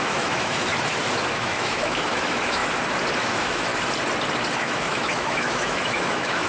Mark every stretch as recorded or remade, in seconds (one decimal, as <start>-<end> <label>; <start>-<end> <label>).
0.0-0.7 remade; 0.7-1.3 recorded; 1.3-2.6 remade; 2.6-3.2 recorded; 3.2-3.7 remade; 3.7-4.5 recorded; 4.5-6.5 remade

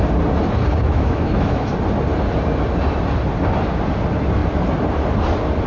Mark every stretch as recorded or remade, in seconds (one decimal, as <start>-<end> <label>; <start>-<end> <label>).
0.0-0.8 recorded; 0.8-1.7 remade; 1.7-5.7 recorded